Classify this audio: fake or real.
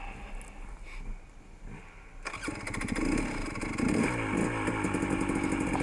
real